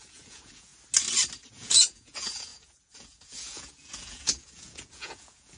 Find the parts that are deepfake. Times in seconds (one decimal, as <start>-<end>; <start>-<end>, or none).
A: 0.0-0.7; 1.5-5.6